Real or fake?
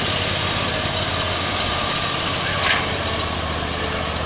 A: real